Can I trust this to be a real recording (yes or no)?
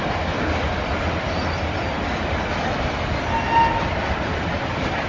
yes